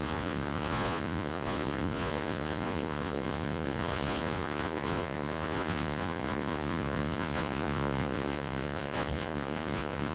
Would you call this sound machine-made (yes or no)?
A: yes